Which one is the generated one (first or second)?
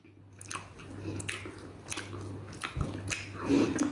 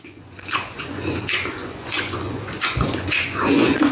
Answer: second